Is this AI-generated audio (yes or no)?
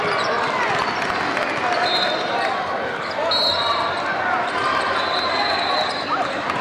no